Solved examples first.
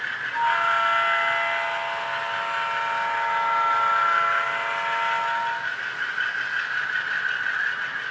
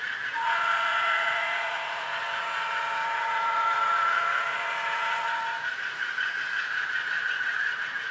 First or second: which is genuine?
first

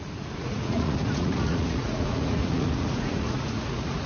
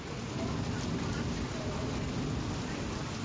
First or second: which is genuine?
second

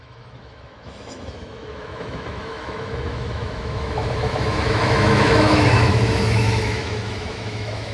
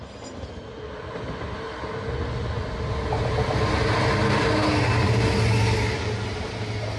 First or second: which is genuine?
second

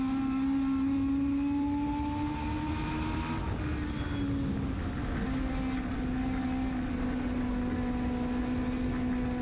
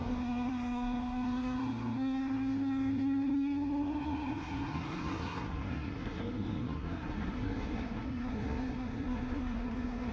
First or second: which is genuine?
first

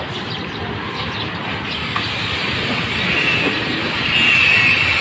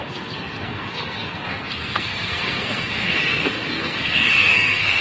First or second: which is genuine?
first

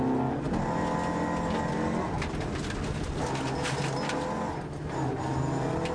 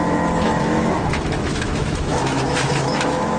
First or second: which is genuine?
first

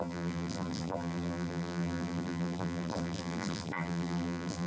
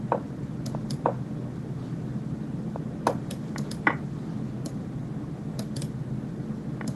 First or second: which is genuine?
second